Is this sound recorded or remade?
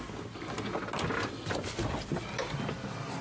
recorded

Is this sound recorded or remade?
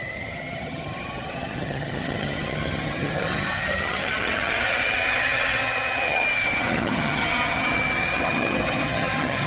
remade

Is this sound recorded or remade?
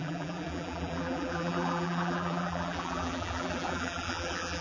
remade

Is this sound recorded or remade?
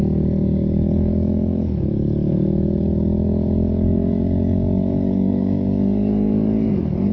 remade